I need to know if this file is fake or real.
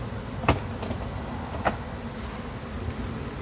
real